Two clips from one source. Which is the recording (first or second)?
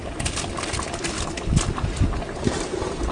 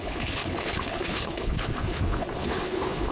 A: first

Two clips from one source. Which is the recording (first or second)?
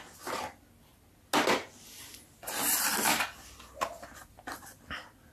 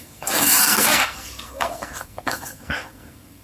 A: first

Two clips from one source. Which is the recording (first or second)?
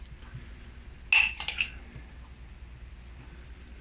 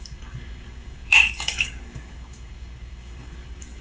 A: first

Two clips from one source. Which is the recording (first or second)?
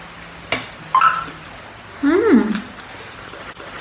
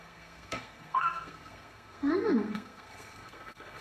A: first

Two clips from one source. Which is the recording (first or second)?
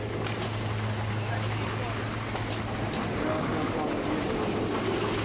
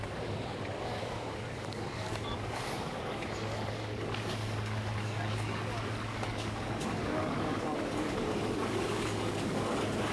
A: first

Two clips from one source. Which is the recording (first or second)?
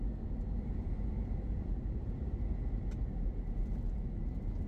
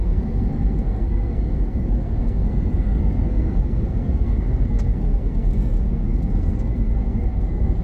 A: first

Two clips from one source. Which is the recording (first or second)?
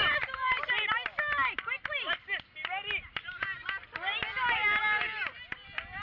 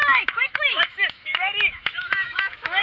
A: first